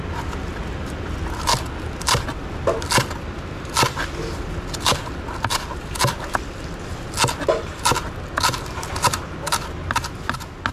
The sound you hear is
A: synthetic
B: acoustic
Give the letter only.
B